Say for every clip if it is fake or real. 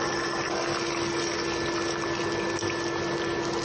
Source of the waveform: real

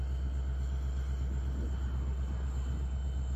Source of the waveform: real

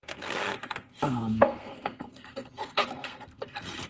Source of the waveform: fake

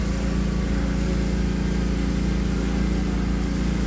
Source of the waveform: real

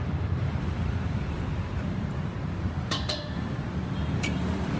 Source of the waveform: fake